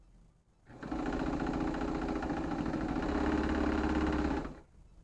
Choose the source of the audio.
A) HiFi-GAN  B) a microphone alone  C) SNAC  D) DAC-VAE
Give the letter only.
B